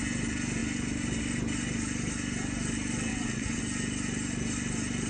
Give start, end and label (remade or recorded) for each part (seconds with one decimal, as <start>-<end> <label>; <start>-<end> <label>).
0.0-3.1 recorded; 3.1-3.6 remade; 3.6-5.1 recorded